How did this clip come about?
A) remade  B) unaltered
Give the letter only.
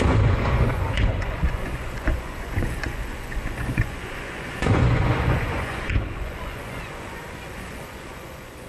A